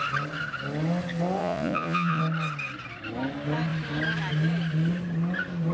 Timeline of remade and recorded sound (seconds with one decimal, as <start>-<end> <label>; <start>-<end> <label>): 0.0-1.4 recorded; 1.4-2.2 remade; 2.2-5.7 recorded